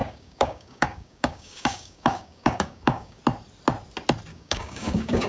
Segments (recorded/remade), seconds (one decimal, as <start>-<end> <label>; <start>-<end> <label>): 0.0-3.2 remade; 3.2-4.3 recorded; 4.3-5.3 remade